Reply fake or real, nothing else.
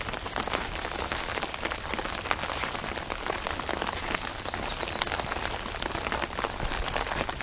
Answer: real